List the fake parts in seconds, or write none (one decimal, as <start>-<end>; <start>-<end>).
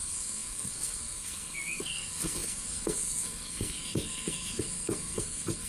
0.0-5.7